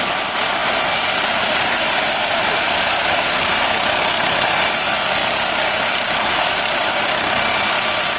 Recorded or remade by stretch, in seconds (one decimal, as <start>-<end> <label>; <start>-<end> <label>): 0.0-0.6 recorded; 0.6-3.6 remade; 3.6-5.2 recorded; 5.2-7.0 remade; 7.0-8.2 recorded